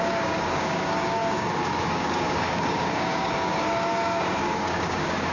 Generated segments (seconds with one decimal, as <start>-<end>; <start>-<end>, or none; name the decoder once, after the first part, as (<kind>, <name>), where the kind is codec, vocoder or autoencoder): 0.0-5.3 (codec, DAC)